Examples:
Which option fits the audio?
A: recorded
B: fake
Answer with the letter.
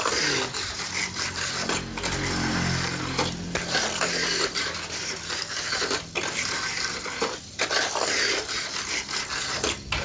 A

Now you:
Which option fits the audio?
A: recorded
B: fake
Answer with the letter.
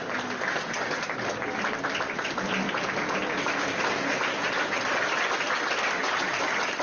A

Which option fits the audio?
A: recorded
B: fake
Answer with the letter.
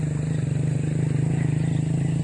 A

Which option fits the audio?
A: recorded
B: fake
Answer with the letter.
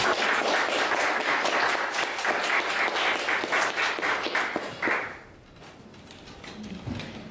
A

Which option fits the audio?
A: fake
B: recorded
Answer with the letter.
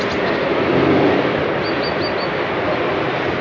B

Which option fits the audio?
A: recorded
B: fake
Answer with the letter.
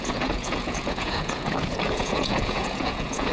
B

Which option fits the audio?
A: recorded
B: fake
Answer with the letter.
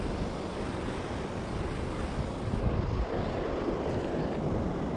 A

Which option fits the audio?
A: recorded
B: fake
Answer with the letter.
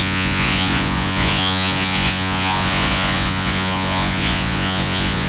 B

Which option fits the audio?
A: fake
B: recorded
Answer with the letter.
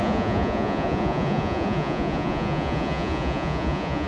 A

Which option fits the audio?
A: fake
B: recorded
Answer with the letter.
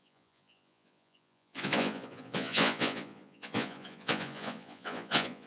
A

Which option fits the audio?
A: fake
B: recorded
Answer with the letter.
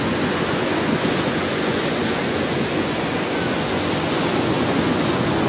A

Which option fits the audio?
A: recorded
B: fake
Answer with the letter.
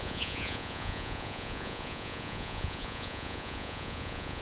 B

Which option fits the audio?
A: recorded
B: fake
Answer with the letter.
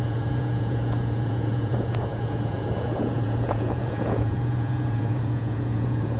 B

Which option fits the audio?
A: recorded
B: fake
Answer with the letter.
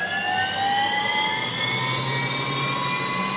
A